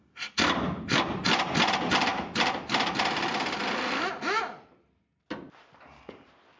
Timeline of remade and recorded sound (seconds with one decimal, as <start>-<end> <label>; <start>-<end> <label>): 0.0-6.6 recorded